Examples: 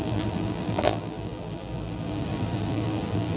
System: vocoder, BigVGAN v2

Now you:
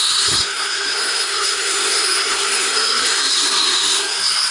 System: codec, SNAC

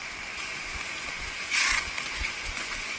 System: vocoder, Vocos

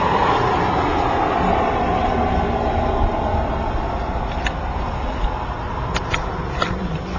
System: none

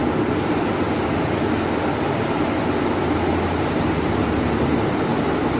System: none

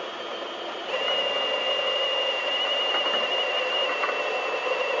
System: none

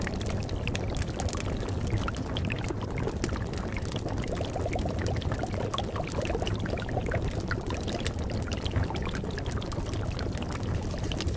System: none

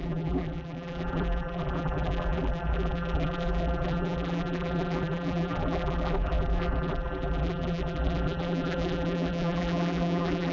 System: vocoder, BigVGAN v2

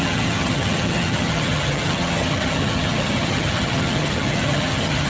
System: vocoder, HiFi-GAN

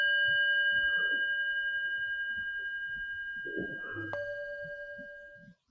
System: none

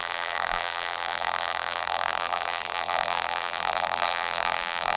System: vocoder, BigVGAN v2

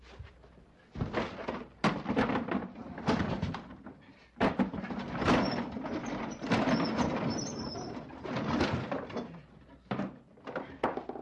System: none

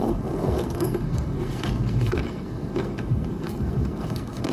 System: codec, SNAC